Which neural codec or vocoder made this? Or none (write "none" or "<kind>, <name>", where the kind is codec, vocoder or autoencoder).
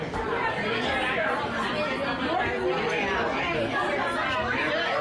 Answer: none